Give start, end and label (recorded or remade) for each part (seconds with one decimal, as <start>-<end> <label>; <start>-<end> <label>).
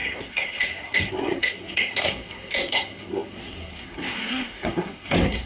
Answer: 0.0-5.5 remade